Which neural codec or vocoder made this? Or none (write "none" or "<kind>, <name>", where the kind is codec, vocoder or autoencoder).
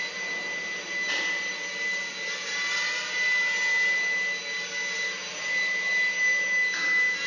none